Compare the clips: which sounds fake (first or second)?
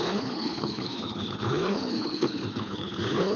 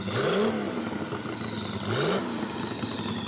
first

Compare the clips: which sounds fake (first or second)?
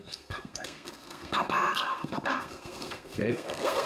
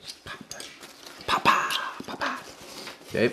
first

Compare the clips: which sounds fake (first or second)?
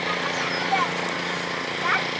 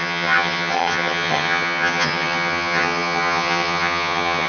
second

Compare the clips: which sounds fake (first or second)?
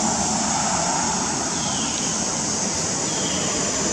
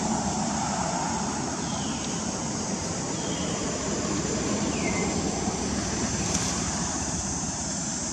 second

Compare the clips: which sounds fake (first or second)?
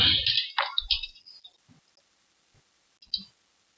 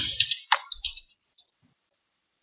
second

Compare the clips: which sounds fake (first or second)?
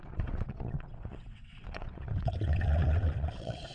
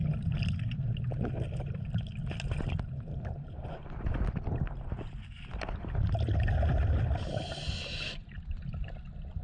first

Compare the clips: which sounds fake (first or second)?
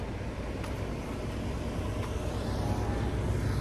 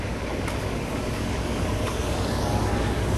second